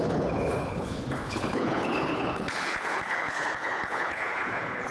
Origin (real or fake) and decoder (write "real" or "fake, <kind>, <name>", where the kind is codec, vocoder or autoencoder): fake, codec, HILCodec